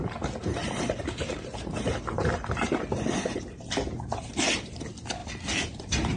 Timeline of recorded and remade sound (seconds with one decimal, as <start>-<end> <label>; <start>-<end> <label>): 0.0-0.6 recorded; 0.6-4.3 remade; 4.3-5.2 recorded; 5.2-6.2 remade